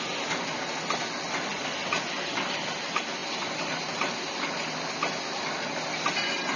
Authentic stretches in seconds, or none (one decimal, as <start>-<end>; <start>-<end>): 0.0-3.2; 4.4-6.6